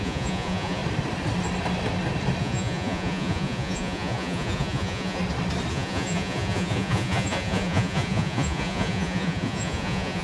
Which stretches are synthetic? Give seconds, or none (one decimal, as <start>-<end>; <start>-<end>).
0.0-0.8; 2.4-5.2; 5.7-10.2